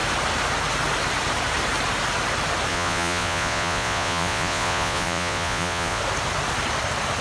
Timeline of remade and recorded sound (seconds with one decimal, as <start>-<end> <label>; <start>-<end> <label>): 0.0-2.7 recorded; 2.7-6.0 remade; 6.0-7.2 recorded